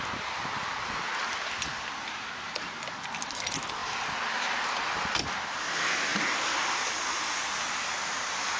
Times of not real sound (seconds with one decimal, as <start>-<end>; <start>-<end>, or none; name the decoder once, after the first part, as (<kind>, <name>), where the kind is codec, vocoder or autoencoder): none